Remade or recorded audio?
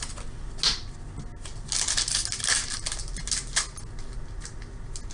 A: recorded